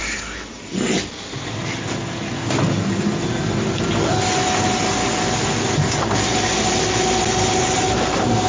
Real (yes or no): yes